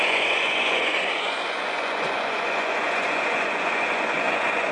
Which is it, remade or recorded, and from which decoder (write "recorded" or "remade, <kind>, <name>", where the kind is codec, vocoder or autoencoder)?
remade, vocoder, Vocos